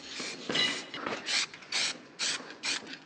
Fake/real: fake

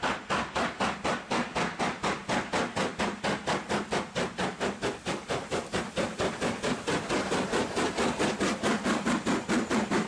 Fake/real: real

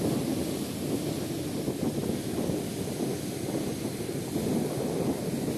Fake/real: real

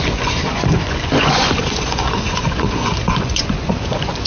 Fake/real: fake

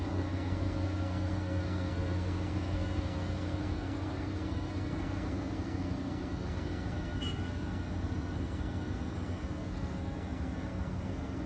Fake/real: fake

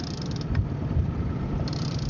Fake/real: fake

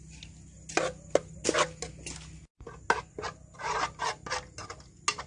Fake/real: real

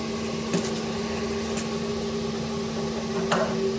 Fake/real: real